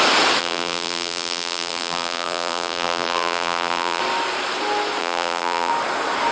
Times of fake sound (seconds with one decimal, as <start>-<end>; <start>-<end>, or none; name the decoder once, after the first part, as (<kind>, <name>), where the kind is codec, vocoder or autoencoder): 0.4-4.0 (vocoder, BigVGAN v2); 5.0-5.7